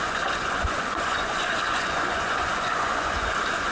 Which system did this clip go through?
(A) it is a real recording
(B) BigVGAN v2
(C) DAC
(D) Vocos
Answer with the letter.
D